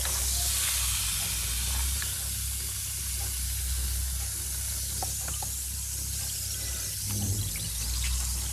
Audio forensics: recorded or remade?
recorded